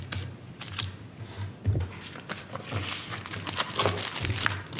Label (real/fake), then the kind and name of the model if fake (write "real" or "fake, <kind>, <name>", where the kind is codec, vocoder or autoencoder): real